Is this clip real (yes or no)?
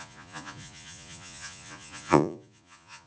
no